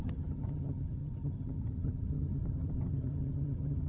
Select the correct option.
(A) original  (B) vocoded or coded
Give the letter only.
B